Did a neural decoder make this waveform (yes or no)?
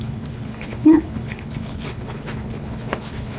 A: yes